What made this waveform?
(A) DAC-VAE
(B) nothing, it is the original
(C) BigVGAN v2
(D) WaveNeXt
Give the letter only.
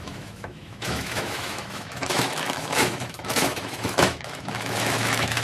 A